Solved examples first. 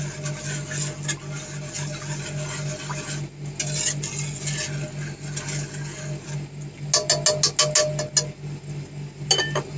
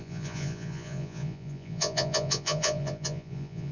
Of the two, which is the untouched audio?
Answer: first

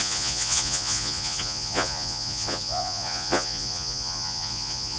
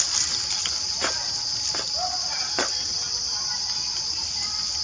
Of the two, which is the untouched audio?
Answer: second